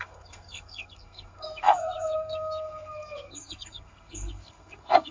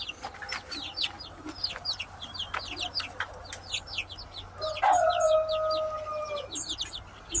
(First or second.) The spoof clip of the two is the first